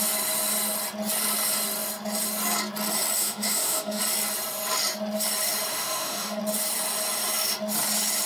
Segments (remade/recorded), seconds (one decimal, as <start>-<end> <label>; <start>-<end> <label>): 0.0-3.2 recorded; 3.2-4.0 remade; 4.0-5.7 recorded; 5.7-6.4 remade; 6.4-8.3 recorded